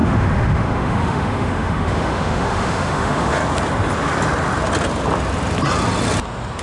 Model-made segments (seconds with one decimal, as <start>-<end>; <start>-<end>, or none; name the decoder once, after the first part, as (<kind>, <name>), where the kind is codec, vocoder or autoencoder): 0.0-3.4 (autoencoder, DAC-VAE)